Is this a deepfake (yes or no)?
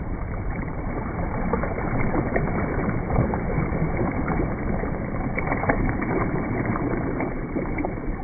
yes